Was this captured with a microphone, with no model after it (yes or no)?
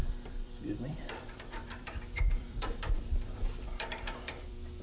no